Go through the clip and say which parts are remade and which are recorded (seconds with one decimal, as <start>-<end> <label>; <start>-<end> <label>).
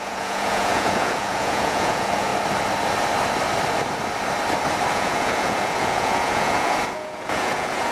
0.0-2.3 remade; 2.3-4.9 recorded; 4.9-7.9 remade